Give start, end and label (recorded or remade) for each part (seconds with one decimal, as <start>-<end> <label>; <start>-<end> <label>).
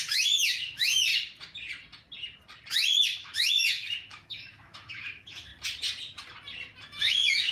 0.0-1.1 remade; 1.1-2.7 recorded; 2.7-5.5 remade; 5.5-6.8 recorded; 6.8-7.5 remade